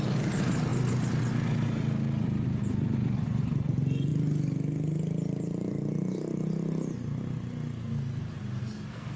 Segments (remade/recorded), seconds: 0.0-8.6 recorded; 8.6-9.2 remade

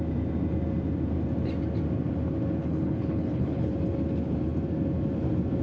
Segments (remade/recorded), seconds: 0.0-2.6 recorded; 2.6-3.7 remade; 3.7-5.6 recorded

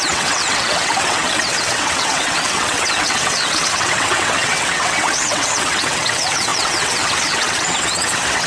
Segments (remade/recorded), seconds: 0.0-8.5 remade

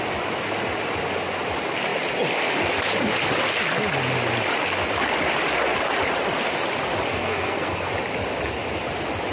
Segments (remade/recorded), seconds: 0.0-7.1 recorded; 7.1-7.9 remade; 7.9-9.3 recorded

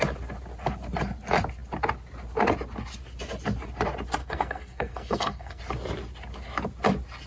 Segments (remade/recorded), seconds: 0.0-4.2 recorded; 4.2-5.6 remade; 5.6-7.3 recorded

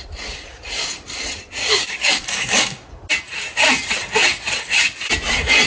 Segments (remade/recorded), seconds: 0.0-1.6 recorded; 1.6-2.9 remade; 2.9-5.7 recorded

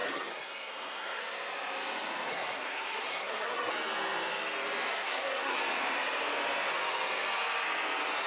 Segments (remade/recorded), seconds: 0.0-1.2 remade; 1.2-2.3 recorded; 2.3-3.7 remade; 3.7-4.9 recorded; 4.9-5.6 remade; 5.6-8.3 recorded